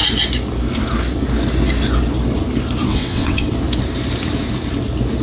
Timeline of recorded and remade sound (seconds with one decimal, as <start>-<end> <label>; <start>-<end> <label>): 0.0-2.9 recorded; 2.9-3.5 remade; 3.5-5.2 recorded